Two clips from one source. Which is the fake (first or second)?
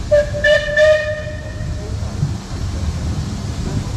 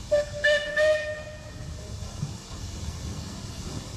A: second